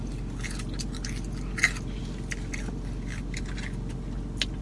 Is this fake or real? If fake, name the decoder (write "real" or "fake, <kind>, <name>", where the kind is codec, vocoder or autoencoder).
real